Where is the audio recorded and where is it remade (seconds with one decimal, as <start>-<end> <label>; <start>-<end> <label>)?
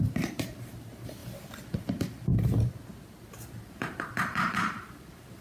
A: 0.0-1.2 remade; 1.2-1.9 recorded; 1.9-2.3 remade; 2.3-3.3 recorded; 3.3-5.4 remade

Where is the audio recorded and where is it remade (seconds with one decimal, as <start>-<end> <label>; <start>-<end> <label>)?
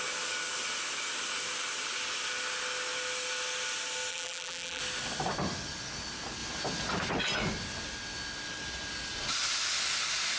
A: 0.0-4.1 recorded; 4.1-4.8 remade; 4.8-10.4 recorded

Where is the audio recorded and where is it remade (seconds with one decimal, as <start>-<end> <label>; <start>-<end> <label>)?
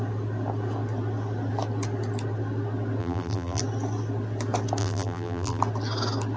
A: 0.0-3.0 recorded; 3.0-3.6 remade; 3.6-4.8 recorded; 4.8-5.6 remade; 5.6-6.4 recorded